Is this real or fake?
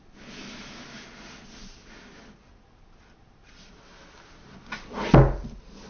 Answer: real